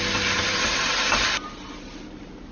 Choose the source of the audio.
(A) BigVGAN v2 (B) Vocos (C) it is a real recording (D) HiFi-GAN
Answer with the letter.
A